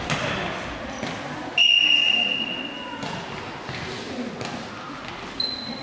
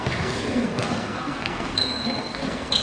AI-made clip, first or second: second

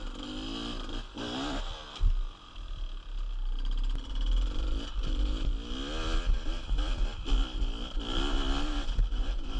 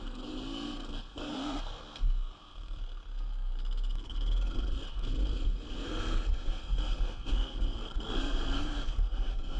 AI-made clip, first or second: second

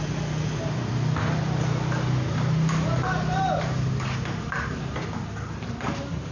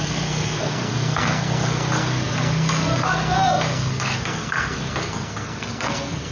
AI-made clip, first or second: second